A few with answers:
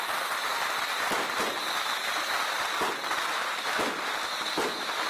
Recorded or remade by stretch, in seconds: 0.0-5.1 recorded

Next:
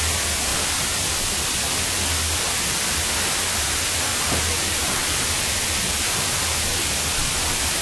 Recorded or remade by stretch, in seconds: 0.0-4.1 recorded; 4.1-6.4 remade; 6.4-7.8 recorded